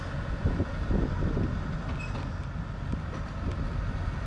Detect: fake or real real